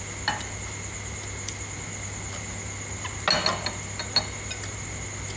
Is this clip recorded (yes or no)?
yes